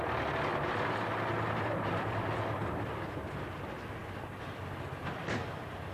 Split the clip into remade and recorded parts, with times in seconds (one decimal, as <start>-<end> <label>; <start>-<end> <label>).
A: 0.0-5.9 recorded